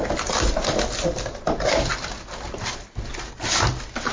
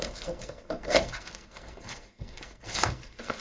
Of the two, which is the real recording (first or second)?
first